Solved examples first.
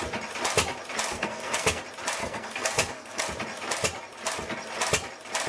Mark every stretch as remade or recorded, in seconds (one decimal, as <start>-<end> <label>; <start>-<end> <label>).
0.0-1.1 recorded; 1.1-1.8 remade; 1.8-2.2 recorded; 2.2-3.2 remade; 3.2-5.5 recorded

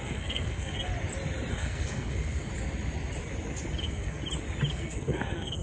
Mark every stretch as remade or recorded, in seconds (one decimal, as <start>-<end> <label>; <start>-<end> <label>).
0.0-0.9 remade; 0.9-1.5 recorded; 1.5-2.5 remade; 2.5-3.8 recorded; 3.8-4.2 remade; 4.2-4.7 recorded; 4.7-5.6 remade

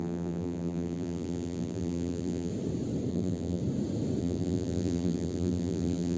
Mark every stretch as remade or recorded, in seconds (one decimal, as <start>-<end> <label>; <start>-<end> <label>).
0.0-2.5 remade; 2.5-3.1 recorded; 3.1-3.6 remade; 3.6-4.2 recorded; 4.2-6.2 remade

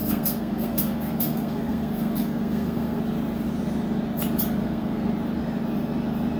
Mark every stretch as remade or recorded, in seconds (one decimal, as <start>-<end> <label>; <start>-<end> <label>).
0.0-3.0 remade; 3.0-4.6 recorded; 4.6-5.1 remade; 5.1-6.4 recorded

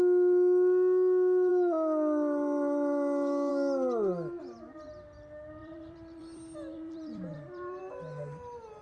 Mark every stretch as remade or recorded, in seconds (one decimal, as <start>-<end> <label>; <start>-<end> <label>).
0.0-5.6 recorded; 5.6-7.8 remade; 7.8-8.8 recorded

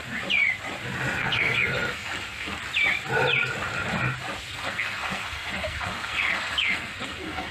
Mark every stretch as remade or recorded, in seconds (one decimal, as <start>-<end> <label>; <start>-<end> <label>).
0.0-1.2 recorded; 1.2-2.6 remade; 2.6-4.5 recorded; 4.5-7.5 remade

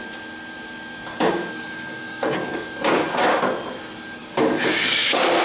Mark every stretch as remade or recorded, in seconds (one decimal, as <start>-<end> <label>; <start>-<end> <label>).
0.0-1.1 recorded; 1.1-3.4 remade; 3.4-4.2 recorded; 4.2-5.4 remade